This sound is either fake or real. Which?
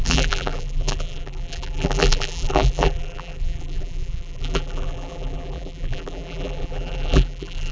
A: fake